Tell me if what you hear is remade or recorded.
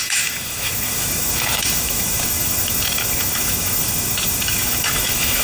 remade